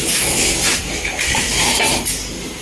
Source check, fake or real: real